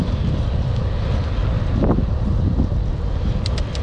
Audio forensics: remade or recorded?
recorded